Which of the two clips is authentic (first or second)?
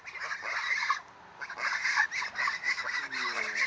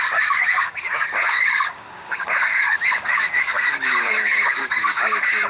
first